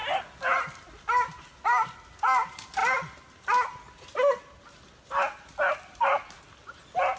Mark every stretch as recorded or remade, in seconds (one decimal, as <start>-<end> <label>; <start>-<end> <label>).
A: 0.0-7.2 recorded